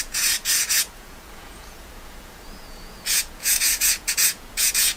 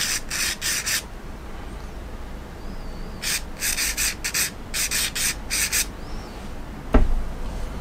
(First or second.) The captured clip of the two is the second